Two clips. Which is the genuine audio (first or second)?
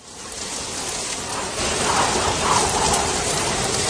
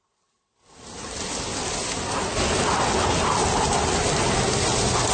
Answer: second